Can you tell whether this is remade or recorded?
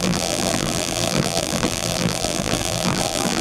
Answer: remade